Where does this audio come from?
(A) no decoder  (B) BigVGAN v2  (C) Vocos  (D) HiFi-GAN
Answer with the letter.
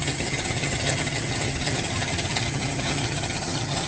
D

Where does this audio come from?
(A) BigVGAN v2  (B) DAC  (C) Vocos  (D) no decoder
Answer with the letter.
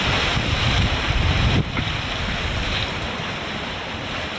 D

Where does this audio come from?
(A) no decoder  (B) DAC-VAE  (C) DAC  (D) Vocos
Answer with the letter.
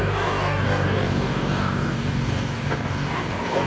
C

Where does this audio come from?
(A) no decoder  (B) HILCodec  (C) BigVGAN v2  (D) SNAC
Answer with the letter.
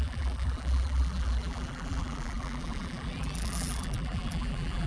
C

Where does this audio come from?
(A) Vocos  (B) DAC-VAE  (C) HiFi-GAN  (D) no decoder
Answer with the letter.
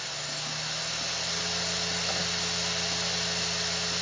D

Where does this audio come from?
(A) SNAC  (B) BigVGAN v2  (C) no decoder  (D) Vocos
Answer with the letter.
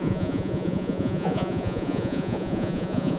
D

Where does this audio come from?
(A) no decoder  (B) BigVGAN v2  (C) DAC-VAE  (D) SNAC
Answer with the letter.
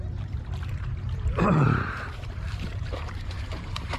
B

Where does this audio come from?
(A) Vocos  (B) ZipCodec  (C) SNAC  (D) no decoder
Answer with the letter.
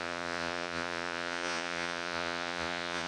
A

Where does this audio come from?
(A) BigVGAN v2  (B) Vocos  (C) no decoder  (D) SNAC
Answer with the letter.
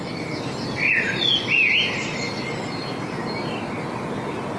C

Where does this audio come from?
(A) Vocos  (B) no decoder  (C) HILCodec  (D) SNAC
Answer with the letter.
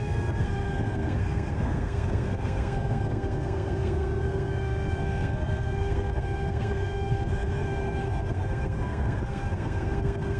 D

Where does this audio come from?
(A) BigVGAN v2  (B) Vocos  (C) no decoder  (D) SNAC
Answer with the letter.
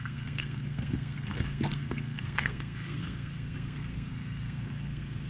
D